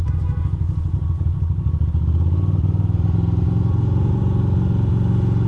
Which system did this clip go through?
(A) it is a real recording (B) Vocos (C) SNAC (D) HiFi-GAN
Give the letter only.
A